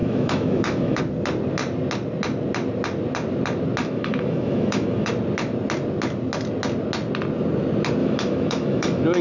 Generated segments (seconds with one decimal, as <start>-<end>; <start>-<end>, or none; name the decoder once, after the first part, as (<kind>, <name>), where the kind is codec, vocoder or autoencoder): 0.0-1.0 (autoencoder, DAC-VAE); 3.8-5.1; 8.0-9.2